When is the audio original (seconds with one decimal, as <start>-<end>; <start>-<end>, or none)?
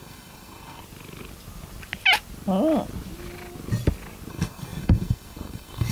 0.8-4.3